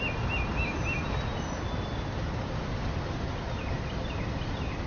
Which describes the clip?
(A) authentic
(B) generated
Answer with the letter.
A